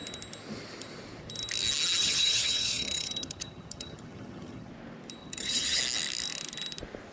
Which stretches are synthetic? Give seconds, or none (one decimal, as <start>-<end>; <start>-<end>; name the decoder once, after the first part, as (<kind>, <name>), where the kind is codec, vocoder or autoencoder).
2.0-4.7 (vocoder, HiFi-GAN); 5.2-5.8